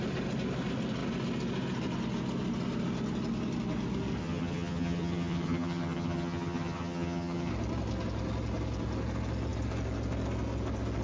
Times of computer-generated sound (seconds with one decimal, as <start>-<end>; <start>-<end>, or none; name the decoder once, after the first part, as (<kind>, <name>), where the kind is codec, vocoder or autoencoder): 4.2-7.5 (vocoder, HiFi-GAN)